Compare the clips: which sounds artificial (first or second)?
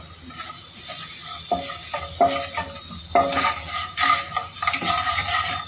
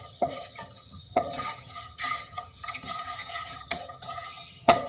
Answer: second